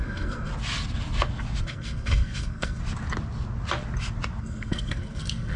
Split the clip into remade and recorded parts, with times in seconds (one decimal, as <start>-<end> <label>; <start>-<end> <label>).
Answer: 0.0-0.5 remade; 0.5-1.6 recorded; 1.6-2.8 remade; 2.8-4.4 recorded; 4.4-5.6 remade